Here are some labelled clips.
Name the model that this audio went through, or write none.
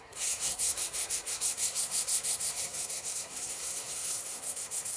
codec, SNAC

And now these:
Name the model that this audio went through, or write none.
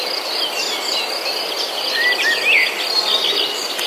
none